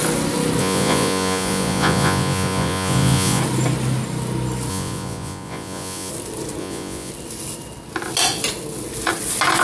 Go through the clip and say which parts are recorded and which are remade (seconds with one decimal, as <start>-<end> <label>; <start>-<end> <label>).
0.0-0.6 recorded; 0.6-3.4 remade; 3.4-4.7 recorded; 4.7-6.1 remade; 6.1-6.6 recorded; 6.6-7.1 remade; 7.1-9.6 recorded